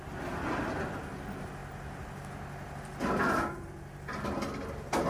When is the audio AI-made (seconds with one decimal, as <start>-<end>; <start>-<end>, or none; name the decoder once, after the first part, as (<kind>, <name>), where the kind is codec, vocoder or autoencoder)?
none